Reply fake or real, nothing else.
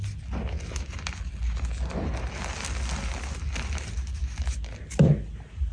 real